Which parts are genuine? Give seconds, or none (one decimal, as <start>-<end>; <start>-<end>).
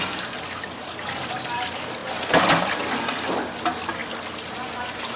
0.0-5.2